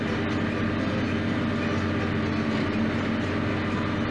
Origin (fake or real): real